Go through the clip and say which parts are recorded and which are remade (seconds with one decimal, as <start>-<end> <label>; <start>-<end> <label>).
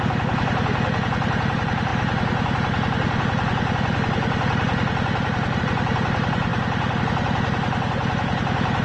0.0-8.8 recorded